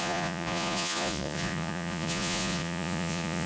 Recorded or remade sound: remade